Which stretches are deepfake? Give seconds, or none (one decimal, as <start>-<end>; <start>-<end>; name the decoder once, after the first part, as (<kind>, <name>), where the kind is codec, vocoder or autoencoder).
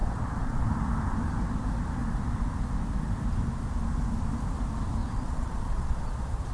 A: 0.0-0.7 (vocoder, Vocos); 5.0-6.5